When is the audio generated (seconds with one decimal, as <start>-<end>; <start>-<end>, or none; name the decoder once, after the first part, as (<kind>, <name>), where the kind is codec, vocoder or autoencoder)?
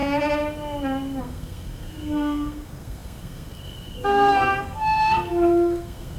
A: 1.2-6.2 (codec, SNAC)